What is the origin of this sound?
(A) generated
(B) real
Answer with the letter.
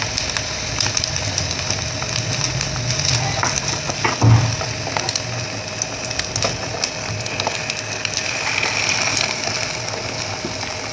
B